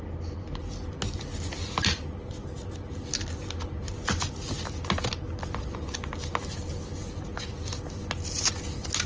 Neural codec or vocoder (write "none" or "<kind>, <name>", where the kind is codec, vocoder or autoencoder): none